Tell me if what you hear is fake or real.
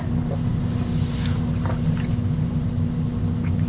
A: real